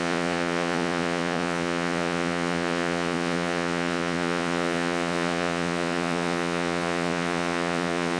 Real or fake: fake